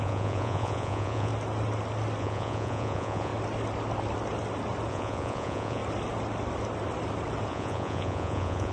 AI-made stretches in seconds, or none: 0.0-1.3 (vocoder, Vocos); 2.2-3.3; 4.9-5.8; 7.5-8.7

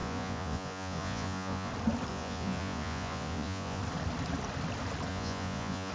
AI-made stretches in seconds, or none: 0.0-1.7 (vocoder, Vocos); 2.1-3.8; 5.1-5.9